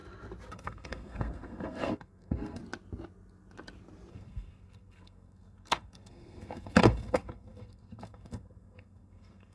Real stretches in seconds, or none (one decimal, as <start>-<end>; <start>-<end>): 0.0-0.5; 2.6-4.1